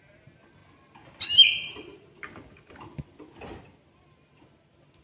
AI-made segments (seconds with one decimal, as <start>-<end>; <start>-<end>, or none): none